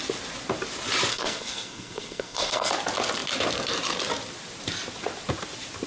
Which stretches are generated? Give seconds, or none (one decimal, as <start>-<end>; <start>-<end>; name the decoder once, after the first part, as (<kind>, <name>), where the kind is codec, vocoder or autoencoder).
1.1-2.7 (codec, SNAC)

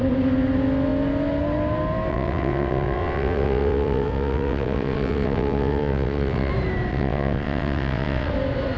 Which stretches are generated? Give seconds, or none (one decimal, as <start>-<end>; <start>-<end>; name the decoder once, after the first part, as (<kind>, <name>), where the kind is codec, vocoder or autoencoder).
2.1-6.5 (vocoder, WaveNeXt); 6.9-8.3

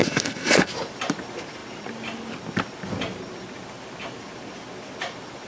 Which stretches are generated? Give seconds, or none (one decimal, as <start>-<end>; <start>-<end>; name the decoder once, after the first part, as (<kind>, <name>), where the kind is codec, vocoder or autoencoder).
0.0-0.7 (codec, SNAC)

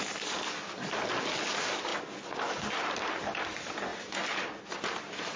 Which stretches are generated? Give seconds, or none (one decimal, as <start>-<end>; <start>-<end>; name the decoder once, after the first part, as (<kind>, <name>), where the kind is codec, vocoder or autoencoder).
none

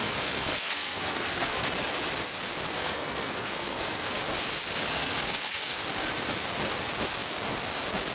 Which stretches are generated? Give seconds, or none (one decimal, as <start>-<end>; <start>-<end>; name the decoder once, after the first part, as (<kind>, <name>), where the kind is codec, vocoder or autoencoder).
0.0-1.7 (codec, SNAC); 2.7-4.2; 4.9-5.9

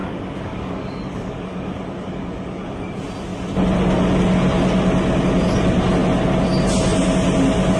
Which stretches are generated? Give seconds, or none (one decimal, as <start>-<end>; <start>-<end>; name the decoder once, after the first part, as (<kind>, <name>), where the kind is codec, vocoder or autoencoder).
0.0-2.7 (codec, DAC)

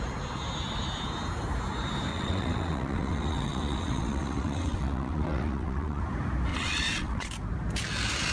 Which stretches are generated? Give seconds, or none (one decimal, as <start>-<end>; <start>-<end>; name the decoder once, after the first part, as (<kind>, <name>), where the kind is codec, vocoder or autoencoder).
2.1-6.0 (vocoder, WaveNeXt); 6.5-7.3